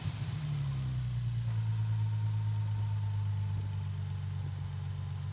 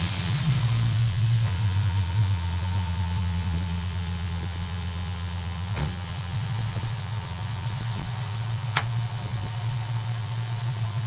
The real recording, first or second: first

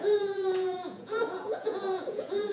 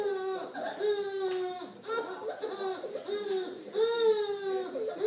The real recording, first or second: second